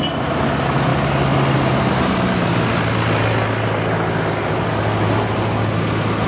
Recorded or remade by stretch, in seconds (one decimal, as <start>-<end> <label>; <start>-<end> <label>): 0.0-6.3 recorded